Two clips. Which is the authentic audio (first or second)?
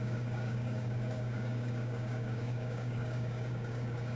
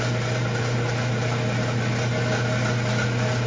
second